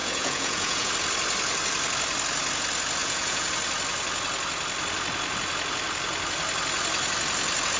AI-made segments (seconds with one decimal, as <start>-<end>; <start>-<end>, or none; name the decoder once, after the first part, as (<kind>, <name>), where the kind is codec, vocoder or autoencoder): 0.0-0.9 (vocoder, Vocos); 3.0-3.5